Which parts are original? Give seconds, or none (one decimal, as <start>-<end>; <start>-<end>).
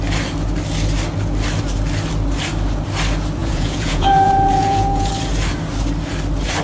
0.0-3.4; 5.1-6.6